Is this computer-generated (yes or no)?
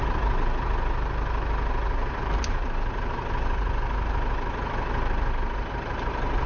no